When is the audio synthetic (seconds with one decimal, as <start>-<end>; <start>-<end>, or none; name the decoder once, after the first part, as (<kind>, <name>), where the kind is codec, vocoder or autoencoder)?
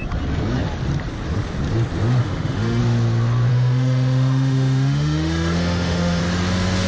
2.2-2.8 (autoencoder, DAC-VAE); 3.5-6.2